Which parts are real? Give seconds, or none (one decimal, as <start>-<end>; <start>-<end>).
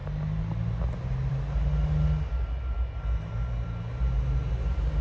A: 0.0-5.0